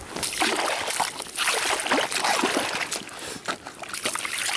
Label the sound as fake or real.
real